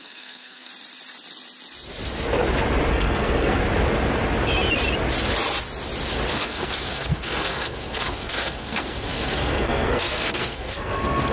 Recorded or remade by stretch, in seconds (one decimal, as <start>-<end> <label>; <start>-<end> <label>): 0.0-0.7 remade; 0.7-2.9 recorded; 2.9-3.6 remade; 3.6-6.3 recorded; 6.3-11.3 remade

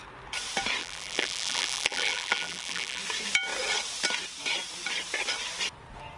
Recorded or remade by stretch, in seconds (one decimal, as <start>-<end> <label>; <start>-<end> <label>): 0.0-0.8 recorded; 0.8-3.0 remade; 3.0-6.2 recorded

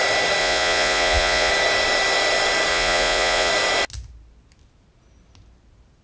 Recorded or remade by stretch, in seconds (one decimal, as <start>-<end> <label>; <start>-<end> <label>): 0.0-0.4 recorded; 0.4-1.5 remade; 1.5-2.7 recorded; 2.7-3.5 remade; 3.5-6.0 recorded

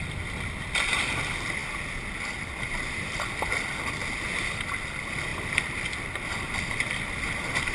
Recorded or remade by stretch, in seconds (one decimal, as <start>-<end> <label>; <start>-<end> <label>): 0.0-7.7 recorded

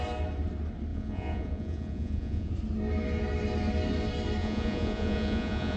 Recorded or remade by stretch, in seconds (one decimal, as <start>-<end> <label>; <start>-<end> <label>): 0.0-0.9 recorded; 0.9-2.5 remade; 2.5-4.4 recorded; 4.4-5.8 remade

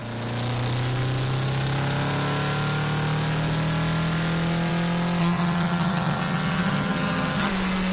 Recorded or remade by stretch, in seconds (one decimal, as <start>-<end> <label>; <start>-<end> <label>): 0.0-5.2 recorded; 5.2-7.5 remade; 7.5-7.9 recorded